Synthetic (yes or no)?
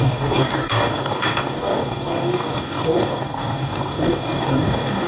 yes